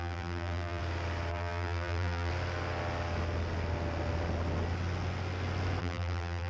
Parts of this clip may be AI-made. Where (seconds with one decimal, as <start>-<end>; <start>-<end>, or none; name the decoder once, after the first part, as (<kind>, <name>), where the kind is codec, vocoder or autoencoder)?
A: 0.0-0.8 (vocoder, BigVGAN v2); 1.3-2.3; 5.8-6.5